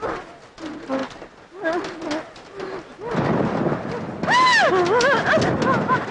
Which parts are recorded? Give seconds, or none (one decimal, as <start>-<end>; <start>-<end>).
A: 0.0-6.1